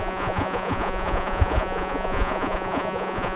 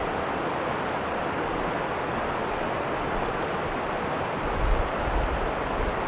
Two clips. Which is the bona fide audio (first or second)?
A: second